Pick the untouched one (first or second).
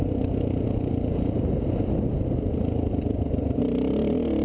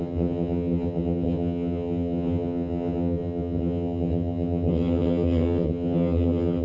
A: first